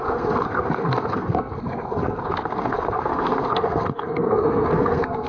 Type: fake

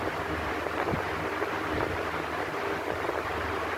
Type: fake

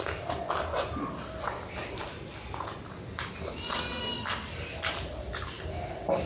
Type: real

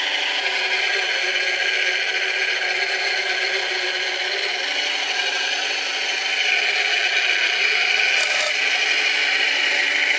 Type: real